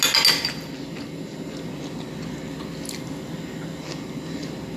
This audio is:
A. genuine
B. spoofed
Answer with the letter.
A